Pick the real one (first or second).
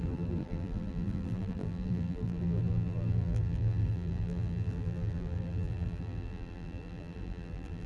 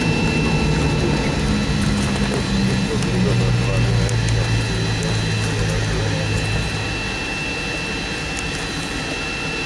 second